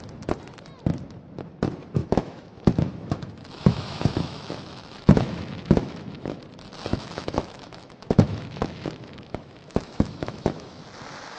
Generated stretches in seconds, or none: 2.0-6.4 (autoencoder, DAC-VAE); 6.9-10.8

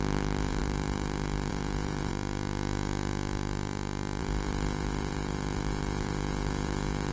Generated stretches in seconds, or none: 0.0-2.1 (vocoder, BigVGAN v2); 4.2-7.1

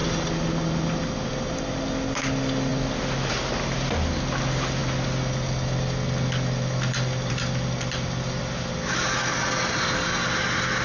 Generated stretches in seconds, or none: none

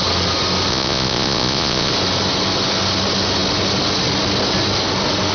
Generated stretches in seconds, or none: 0.7-1.9 (vocoder, Vocos)

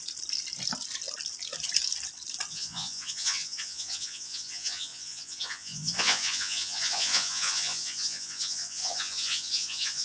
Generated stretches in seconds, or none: 2.5-10.0 (vocoder, Vocos)